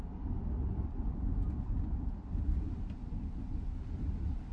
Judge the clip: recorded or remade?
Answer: recorded